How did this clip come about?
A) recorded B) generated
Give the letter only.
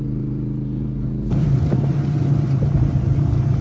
B